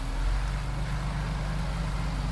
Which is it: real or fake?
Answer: real